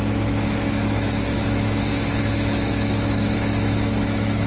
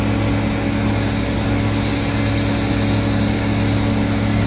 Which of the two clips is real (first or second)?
second